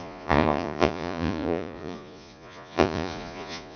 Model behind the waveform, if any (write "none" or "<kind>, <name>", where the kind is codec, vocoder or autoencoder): vocoder, Vocos